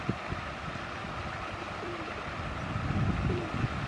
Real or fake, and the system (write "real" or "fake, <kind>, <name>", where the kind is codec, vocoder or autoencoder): real